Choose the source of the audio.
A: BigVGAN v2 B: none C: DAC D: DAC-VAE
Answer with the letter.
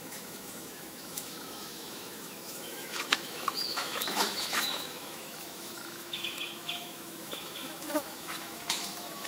D